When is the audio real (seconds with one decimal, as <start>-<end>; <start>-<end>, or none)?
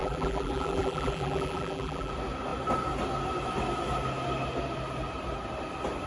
2.1-6.1